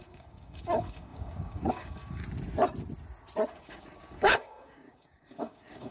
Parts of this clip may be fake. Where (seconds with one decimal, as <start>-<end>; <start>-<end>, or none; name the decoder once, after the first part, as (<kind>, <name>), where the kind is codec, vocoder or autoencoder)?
0.0-2.2 (codec, DAC); 3.5-5.9